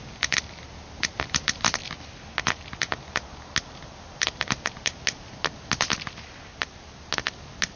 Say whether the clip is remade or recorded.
recorded